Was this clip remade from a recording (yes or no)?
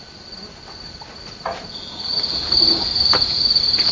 no